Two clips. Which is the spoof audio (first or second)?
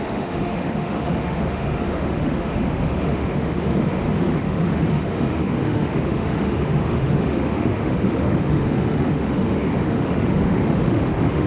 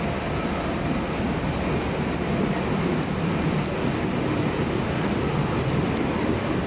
first